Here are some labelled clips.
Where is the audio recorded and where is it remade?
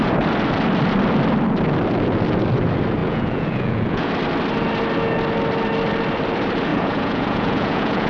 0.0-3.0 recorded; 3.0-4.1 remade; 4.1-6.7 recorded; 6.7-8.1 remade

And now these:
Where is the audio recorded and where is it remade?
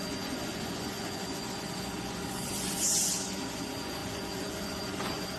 0.0-5.4 remade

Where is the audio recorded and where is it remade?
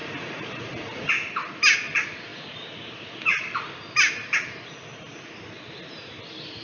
0.0-1.1 remade; 1.1-6.6 recorded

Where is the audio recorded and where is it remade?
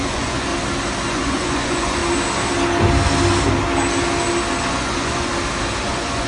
0.0-0.5 remade; 0.5-1.1 recorded; 1.1-2.0 remade; 2.0-4.7 recorded; 4.7-5.3 remade; 5.3-5.8 recorded; 5.8-6.3 remade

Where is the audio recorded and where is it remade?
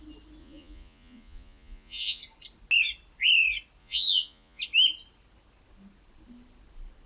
0.0-0.4 recorded; 0.4-2.2 remade; 2.2-3.8 recorded; 3.8-4.6 remade; 4.6-7.1 recorded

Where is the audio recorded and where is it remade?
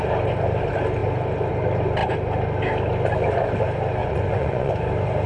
0.0-4.0 recorded; 4.0-4.7 remade; 4.7-5.3 recorded